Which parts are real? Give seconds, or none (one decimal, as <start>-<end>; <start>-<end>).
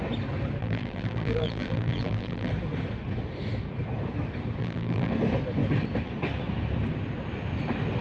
0.0-0.6; 2.5-4.6; 5.1-8.0